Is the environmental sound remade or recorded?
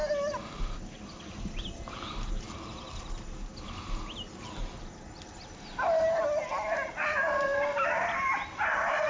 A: recorded